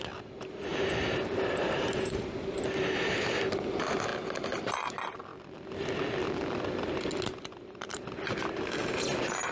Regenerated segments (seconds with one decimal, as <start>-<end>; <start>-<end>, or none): 0.7-2.6

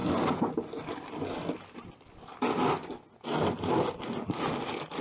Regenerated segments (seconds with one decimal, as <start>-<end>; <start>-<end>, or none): none

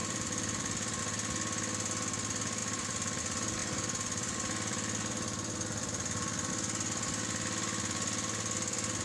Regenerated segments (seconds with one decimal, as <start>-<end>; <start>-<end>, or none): 0.0-1.0; 2.6-3.2; 3.6-6.5

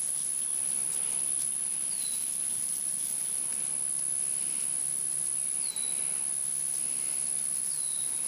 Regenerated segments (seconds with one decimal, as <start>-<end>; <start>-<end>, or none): 0.0-0.5; 1.5-3.5; 7.6-8.3

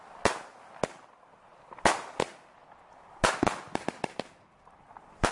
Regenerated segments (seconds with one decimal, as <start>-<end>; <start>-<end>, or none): none

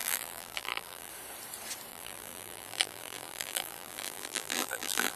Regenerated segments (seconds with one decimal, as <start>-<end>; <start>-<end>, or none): 0.0-1.1; 1.9-5.2

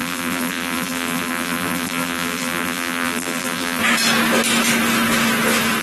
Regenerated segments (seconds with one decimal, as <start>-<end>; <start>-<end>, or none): 0.0-3.8

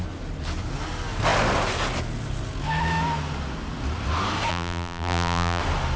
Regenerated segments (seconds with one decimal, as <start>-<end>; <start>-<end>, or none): 4.5-5.6